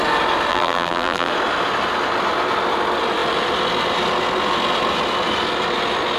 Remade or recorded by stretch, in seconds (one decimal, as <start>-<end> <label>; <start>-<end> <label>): 0.0-0.5 recorded; 0.5-1.3 remade; 1.3-6.2 recorded